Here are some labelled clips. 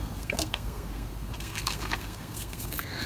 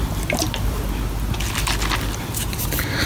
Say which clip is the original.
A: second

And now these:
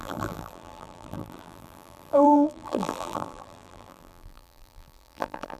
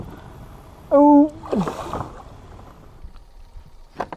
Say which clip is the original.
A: second